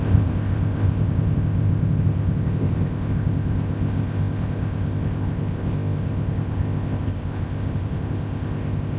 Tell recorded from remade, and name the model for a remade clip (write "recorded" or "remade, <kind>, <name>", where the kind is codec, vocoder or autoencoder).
remade, codec, ZipCodec